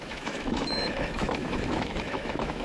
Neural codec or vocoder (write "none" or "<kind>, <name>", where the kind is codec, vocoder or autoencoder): autoencoder, DAC-VAE